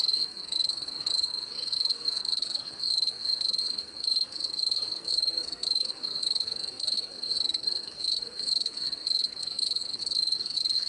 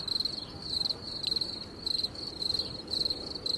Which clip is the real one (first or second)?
second